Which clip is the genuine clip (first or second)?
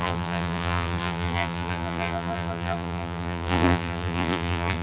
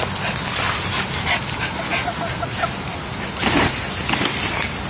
second